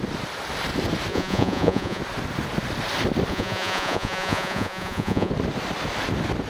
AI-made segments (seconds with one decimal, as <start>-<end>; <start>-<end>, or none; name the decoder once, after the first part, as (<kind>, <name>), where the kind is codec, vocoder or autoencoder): 1.1-2.0 (vocoder, Vocos); 3.3-5.3

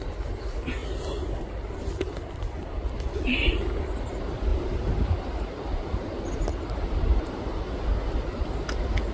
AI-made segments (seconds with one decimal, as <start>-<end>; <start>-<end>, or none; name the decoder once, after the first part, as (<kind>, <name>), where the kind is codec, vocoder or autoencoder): 4.5-5.5 (vocoder, BigVGAN v2); 6.5-7.3

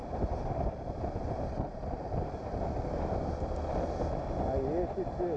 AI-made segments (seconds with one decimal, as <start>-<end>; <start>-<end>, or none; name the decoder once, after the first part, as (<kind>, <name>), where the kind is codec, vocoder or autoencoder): 0.0-3.2 (vocoder, BigVGAN v2)

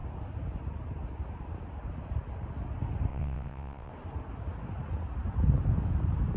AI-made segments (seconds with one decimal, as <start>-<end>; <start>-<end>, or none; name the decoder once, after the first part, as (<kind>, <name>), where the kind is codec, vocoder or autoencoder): 3.1-3.9 (vocoder, WaveNeXt)

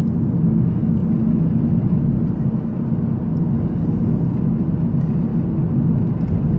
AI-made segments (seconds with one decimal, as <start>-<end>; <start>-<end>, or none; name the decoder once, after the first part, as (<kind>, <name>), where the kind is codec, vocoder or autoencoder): none

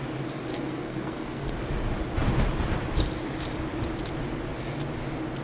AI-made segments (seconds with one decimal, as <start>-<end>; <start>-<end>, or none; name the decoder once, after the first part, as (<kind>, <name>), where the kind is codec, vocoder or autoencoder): 0.5-1.5 (codec, SNAC)